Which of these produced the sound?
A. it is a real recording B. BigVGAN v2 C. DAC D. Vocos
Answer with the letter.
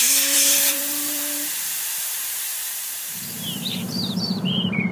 B